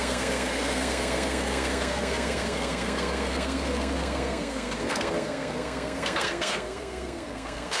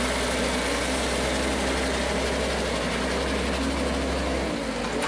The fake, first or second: first